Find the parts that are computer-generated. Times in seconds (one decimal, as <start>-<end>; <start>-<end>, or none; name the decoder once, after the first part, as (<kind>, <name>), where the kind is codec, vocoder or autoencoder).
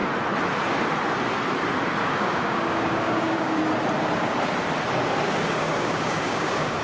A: 2.0-3.6 (codec, DAC); 5.2-6.8